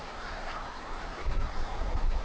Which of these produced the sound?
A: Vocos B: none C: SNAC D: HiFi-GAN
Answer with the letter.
C